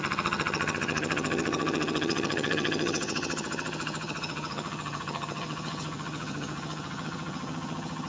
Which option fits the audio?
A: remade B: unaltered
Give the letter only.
A